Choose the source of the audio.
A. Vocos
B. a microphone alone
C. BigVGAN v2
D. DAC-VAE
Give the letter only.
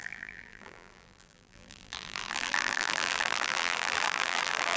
C